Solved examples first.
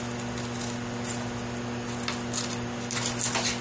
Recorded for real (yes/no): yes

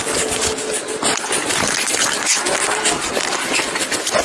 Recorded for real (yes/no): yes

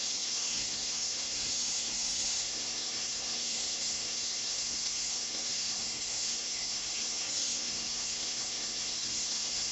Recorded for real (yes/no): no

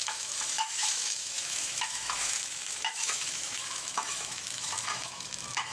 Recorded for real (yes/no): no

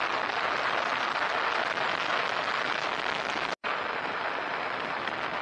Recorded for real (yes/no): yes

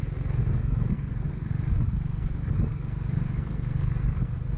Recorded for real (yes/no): no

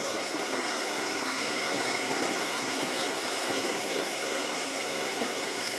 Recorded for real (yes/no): no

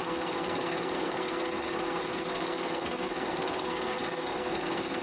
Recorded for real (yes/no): no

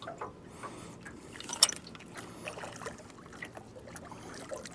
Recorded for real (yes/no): yes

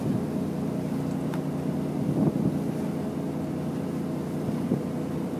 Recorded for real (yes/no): yes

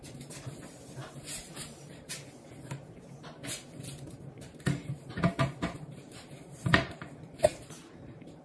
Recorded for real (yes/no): no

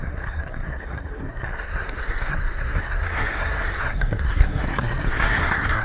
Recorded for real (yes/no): no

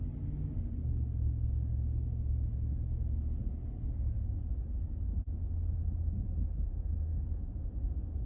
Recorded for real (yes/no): yes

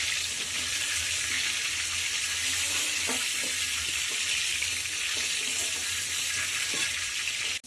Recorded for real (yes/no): yes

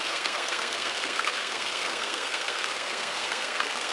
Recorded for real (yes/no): no